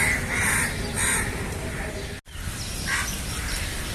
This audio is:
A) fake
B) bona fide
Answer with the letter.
B